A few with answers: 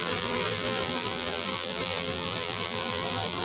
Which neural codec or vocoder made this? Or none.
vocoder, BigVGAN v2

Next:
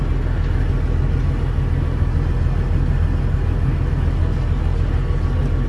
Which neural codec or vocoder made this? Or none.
none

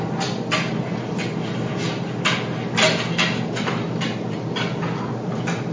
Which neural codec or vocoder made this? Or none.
none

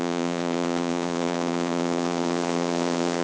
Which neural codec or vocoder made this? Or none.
vocoder, Vocos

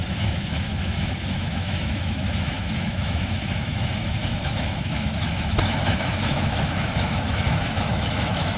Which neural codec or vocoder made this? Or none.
autoencoder, DAC-VAE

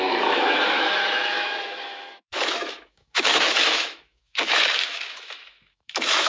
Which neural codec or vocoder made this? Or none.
autoencoder, DAC-VAE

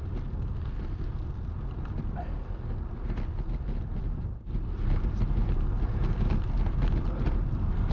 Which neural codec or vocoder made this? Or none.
none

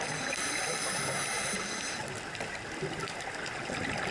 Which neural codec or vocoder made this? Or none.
none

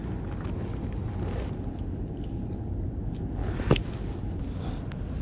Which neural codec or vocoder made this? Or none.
none